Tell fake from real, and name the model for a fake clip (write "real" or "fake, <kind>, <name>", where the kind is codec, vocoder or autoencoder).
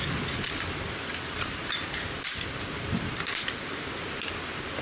fake, vocoder, BigVGAN v2